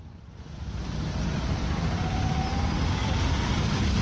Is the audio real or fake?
real